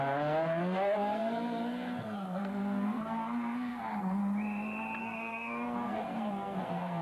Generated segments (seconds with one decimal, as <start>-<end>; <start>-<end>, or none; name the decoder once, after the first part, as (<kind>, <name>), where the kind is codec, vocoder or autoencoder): 0.0-4.2 (codec, SNAC); 5.0-7.0